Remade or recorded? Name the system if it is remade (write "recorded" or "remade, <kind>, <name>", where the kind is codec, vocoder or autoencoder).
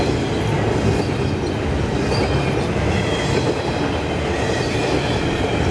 recorded